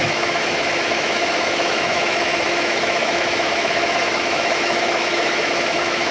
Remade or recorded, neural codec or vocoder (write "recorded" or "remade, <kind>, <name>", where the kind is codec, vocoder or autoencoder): remade, autoencoder, DAC-VAE